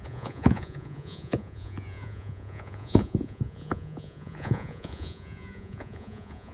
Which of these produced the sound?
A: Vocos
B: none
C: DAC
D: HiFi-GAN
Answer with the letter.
A